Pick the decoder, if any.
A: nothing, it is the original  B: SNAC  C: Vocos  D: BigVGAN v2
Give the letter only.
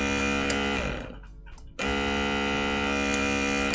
A